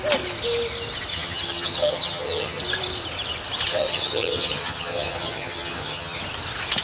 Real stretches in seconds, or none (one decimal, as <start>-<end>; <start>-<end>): 0.0-1.1; 2.6-3.7; 6.2-6.8